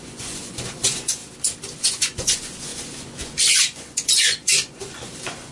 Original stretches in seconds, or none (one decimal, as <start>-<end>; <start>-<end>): 1.2-1.8